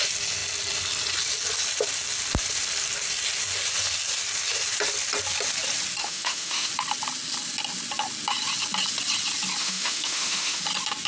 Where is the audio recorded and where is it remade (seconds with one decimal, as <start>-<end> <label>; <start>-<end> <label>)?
0.0-6.0 recorded; 6.0-6.7 remade; 6.7-9.6 recorded; 9.6-10.6 remade; 10.6-11.1 recorded